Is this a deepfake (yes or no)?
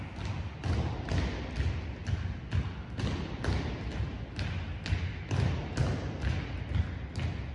no